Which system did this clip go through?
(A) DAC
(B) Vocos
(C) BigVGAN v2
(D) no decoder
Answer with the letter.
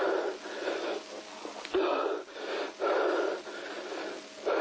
D